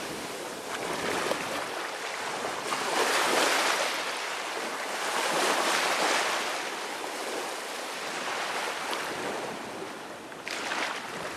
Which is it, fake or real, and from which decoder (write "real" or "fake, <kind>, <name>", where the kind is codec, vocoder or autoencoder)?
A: real